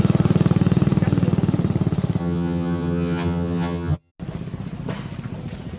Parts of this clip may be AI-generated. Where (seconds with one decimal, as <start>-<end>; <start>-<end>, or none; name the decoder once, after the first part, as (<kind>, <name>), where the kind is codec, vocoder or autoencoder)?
2.2-4.1 (vocoder, HiFi-GAN)

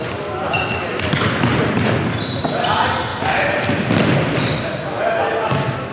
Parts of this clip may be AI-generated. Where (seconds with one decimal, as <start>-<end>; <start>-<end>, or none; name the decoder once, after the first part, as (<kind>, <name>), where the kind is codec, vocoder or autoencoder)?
none